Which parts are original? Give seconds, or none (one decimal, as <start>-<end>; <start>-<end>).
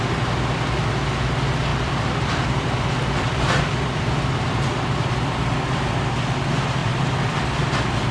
0.0-1.7; 5.7-6.8; 7.6-8.1